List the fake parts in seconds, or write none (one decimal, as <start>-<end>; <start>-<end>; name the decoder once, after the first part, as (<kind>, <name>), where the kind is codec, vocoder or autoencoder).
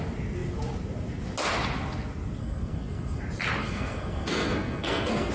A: 2.4-3.2 (codec, SNAC); 3.6-5.3